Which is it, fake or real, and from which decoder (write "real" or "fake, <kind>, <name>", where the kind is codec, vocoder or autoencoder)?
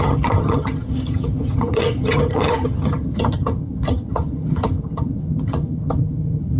fake, vocoder, HiFi-GAN